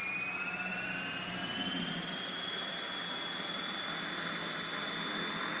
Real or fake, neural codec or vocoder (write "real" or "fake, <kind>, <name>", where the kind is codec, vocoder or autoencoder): real